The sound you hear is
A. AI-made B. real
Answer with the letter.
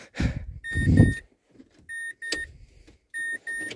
B